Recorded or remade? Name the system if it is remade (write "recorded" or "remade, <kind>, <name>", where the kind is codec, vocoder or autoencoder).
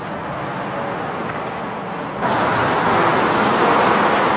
recorded